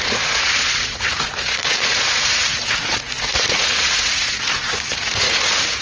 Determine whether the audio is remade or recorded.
remade